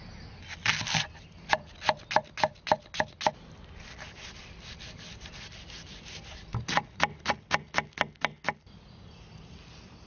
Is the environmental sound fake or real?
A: real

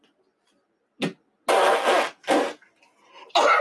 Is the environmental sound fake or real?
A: real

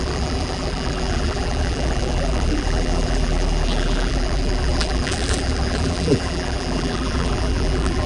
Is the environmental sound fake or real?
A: fake